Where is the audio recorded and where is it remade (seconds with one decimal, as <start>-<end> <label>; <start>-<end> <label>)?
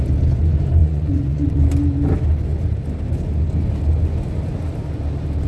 0.0-0.8 recorded; 0.8-1.6 remade; 1.6-5.5 recorded